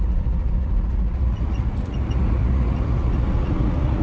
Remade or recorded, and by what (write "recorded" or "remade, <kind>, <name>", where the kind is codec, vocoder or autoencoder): remade, vocoder, Vocos